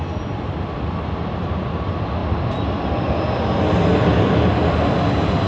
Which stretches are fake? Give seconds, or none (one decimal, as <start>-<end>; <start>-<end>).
none

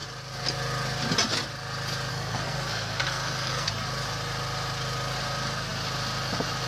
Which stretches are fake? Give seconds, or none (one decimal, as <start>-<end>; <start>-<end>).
2.1-3.7

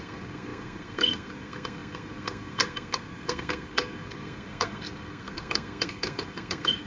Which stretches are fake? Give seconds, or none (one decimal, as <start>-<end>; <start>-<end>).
0.0-6.9

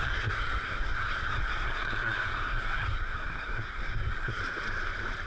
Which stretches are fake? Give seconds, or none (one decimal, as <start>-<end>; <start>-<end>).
0.0-4.4

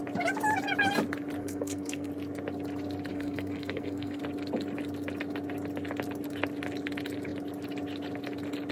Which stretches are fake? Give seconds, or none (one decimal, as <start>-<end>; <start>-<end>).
1.4-2.1; 3.1-4.2

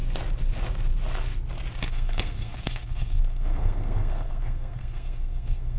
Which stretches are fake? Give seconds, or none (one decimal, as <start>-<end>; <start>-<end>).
1.9-5.8

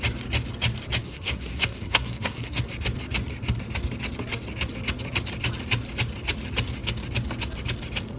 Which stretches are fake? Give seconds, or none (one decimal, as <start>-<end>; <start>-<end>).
1.0-2.6